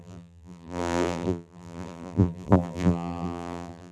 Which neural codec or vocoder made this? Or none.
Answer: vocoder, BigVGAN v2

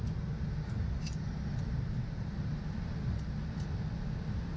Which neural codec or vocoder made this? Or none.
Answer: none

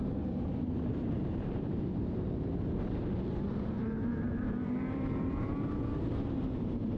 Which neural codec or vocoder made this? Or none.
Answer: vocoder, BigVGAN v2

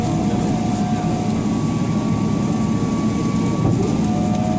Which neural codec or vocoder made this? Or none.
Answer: none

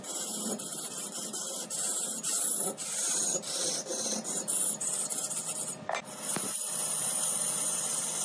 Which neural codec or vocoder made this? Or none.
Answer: vocoder, BigVGAN v2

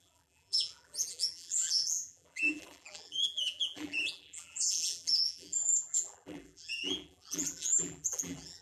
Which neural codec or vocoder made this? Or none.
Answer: vocoder, BigVGAN v2